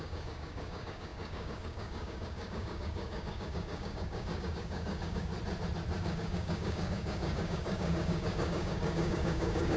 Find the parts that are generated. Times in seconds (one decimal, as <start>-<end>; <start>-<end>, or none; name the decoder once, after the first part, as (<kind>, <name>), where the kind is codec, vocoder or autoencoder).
0.0-5.3 (codec, DAC); 6.0-9.8